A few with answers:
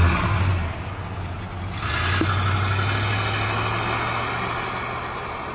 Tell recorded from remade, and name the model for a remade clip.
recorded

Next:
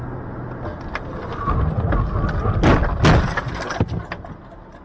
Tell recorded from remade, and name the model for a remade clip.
recorded